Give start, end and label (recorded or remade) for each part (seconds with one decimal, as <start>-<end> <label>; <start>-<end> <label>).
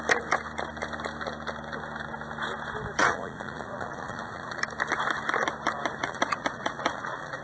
0.0-3.0 recorded; 3.0-4.6 remade; 4.6-6.0 recorded; 6.0-7.4 remade